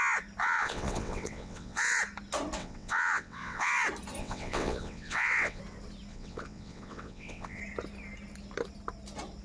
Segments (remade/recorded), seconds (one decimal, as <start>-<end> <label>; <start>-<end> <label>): 0.0-0.4 recorded; 0.4-2.0 remade; 2.0-2.6 recorded; 2.6-3.7 remade; 3.7-4.2 recorded; 4.2-5.6 remade; 5.6-6.1 recorded; 6.1-7.6 remade; 7.6-9.4 recorded